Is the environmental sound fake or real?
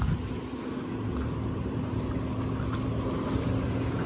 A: real